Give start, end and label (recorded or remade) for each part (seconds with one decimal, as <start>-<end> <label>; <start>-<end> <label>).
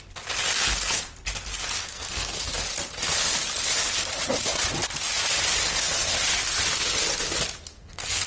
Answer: 0.0-1.8 recorded; 1.8-2.5 remade; 2.5-7.7 recorded; 7.7-8.3 remade